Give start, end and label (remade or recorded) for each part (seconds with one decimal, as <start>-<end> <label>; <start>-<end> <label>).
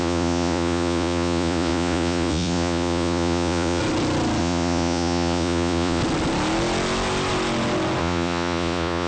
0.0-3.8 remade; 3.8-4.4 recorded; 4.4-6.0 remade; 6.0-8.0 recorded; 8.0-9.1 remade